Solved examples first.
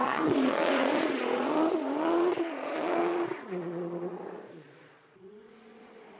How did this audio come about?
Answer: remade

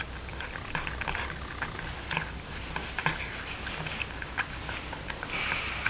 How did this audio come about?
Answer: recorded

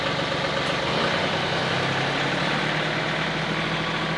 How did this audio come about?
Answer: recorded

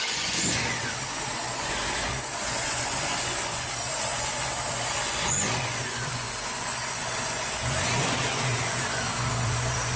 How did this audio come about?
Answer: remade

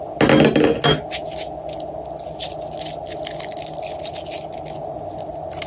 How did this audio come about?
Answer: recorded